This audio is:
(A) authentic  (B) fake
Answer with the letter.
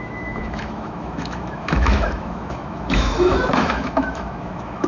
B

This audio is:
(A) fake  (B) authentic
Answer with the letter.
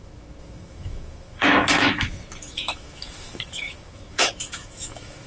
A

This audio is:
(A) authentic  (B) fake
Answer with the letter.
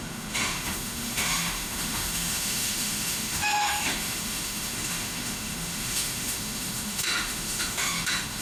B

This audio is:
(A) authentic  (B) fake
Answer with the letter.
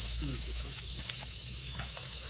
B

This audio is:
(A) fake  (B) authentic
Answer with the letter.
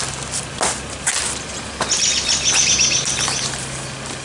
B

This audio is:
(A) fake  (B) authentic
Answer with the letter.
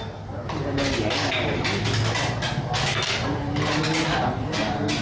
B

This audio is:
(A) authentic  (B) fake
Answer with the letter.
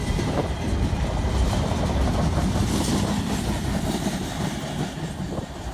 A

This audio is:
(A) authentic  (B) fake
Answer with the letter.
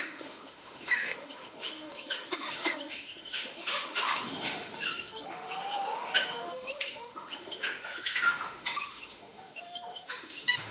B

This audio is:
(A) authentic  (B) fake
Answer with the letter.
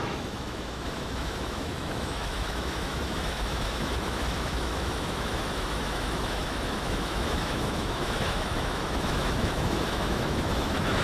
B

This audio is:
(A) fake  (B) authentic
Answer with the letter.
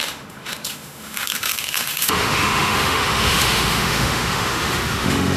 A